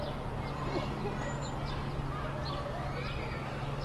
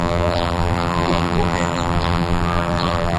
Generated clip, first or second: second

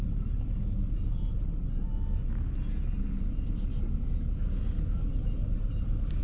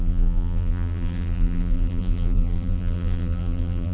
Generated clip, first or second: second